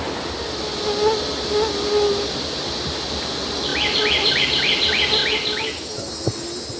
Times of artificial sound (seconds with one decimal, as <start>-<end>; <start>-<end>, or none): none